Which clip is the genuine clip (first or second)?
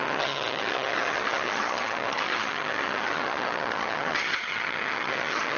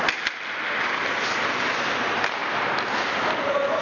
second